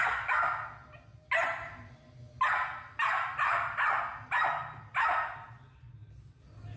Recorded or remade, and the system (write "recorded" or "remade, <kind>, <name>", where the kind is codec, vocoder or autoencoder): recorded